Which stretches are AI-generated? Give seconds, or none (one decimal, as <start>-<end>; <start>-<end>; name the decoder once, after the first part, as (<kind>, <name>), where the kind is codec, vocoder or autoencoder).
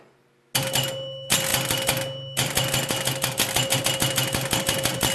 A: none